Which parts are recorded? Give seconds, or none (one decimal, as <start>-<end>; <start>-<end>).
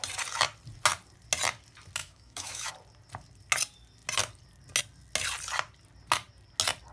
0.0-2.0; 2.7-6.9